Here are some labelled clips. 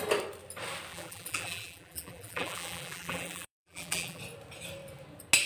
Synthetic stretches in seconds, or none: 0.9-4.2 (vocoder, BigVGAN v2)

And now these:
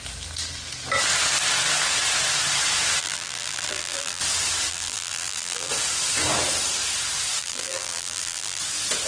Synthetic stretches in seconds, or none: 3.0-4.2 (vocoder, BigVGAN v2); 4.7-5.7; 7.4-8.6